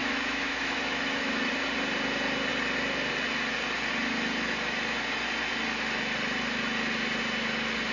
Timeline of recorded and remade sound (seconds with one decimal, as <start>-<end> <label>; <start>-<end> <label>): 0.0-1.5 remade; 1.5-7.9 recorded